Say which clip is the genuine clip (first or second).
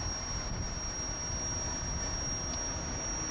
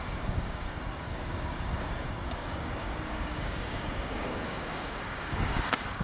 first